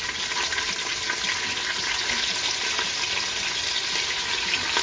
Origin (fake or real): real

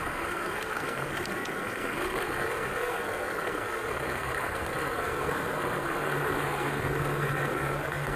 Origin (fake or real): fake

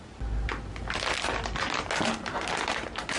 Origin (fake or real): real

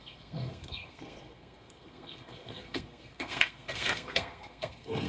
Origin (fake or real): fake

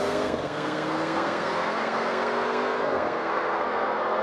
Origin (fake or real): fake